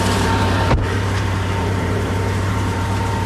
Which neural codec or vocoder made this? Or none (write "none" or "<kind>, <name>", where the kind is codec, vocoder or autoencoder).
vocoder, BigVGAN v2